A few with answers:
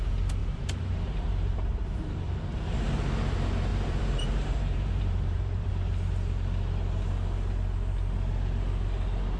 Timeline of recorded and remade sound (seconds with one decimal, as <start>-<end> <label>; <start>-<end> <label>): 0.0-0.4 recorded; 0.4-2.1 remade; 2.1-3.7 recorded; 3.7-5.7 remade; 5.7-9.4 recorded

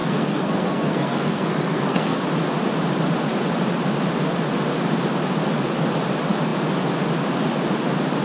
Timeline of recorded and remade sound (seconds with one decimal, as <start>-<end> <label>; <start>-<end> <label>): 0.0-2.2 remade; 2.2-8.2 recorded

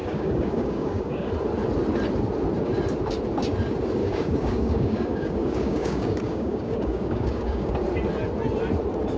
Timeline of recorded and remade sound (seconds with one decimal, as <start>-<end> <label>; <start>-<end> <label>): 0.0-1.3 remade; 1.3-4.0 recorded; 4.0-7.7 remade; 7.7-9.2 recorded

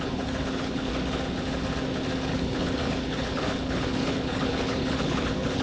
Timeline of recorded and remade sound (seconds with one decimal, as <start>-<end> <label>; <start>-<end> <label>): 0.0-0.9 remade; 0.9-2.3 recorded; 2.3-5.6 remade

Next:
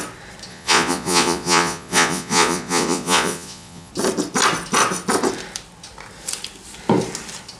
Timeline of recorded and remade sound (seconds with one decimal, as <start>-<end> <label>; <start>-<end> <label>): 0.0-0.5 recorded; 0.5-3.9 remade; 3.9-7.6 recorded

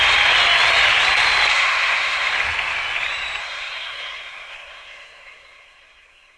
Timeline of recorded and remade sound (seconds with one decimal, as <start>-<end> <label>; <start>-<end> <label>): 0.0-1.5 recorded; 1.5-2.3 remade; 2.3-3.4 recorded; 3.4-6.4 remade